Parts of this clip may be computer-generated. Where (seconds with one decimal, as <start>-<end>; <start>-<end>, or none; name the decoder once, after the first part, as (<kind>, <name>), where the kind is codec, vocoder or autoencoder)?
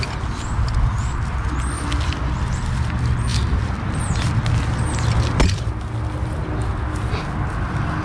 none